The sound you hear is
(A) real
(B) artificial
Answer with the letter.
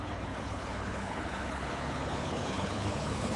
B